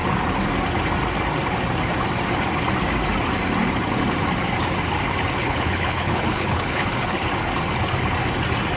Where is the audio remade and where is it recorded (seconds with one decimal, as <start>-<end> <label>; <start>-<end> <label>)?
0.0-5.4 recorded; 5.4-7.3 remade; 7.3-8.8 recorded